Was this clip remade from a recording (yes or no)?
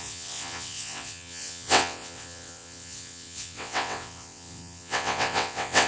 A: yes